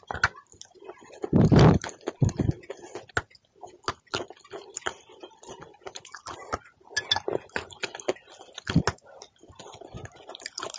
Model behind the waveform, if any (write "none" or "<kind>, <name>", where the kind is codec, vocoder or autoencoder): none